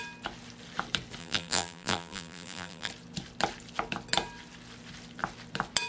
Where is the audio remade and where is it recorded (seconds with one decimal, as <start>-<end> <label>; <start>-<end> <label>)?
0.0-1.2 recorded; 1.2-2.9 remade; 2.9-5.9 recorded